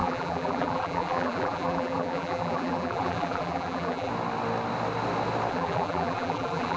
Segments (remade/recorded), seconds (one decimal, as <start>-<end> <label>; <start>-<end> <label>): 0.0-4.1 remade; 4.1-5.5 recorded; 5.5-6.8 remade